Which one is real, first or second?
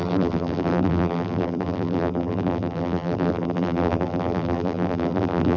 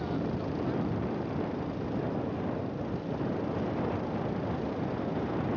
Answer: second